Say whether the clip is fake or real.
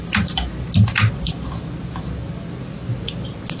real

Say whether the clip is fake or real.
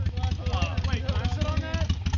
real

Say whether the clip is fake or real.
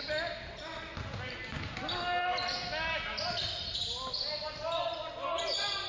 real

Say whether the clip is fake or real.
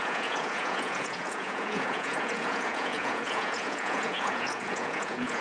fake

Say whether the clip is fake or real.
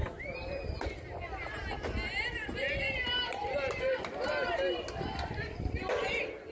real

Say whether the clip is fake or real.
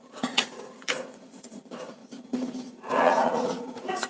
fake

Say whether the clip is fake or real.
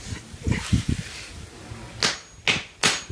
real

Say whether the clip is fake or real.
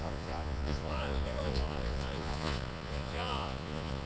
fake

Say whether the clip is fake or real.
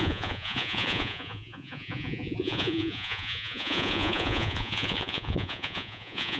fake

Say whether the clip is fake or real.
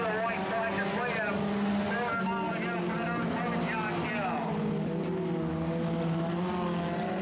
real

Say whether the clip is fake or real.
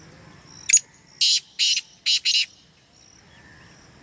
real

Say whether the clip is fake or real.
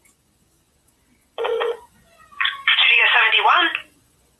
fake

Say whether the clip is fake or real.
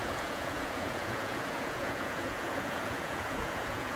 fake